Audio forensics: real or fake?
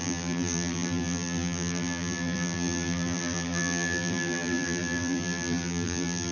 fake